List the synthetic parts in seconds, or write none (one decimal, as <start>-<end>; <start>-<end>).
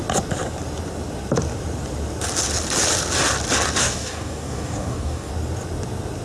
3.8-5.3